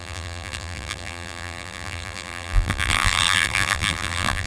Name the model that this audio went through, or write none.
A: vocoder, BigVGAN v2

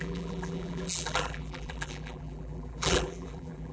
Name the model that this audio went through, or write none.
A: vocoder, BigVGAN v2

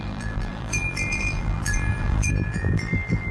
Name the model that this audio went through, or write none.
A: vocoder, BigVGAN v2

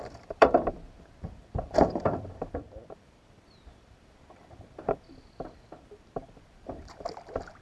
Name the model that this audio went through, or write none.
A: vocoder, BigVGAN v2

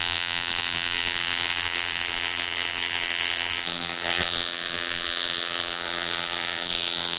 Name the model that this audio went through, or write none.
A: vocoder, BigVGAN v2